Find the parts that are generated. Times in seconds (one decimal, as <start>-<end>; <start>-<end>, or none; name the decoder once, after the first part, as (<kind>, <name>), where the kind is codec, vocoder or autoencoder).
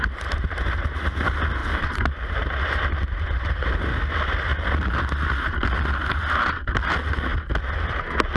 1.6-4.1 (vocoder, BigVGAN v2)